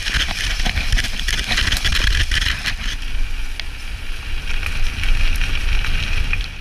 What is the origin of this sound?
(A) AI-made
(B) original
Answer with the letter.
B